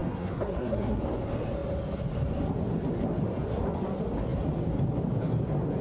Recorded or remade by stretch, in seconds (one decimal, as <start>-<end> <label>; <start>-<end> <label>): 0.0-1.0 remade; 1.0-5.8 recorded